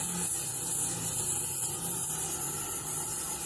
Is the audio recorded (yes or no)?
yes